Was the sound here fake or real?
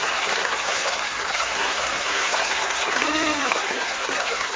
fake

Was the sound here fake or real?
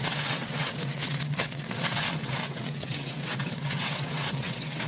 fake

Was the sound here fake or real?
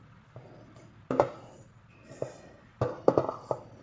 real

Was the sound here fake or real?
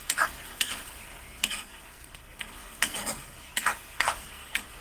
fake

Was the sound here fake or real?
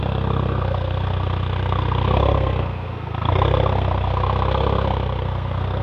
fake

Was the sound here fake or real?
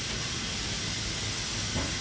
real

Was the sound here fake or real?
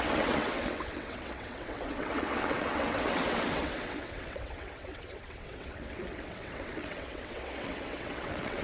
fake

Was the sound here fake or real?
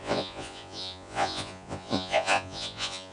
fake